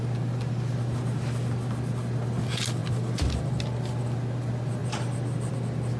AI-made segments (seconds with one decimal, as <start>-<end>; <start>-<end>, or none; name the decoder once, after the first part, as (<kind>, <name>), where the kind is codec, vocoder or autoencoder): none